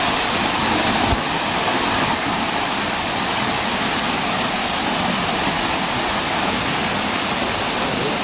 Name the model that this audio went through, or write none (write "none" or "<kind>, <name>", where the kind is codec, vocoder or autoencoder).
none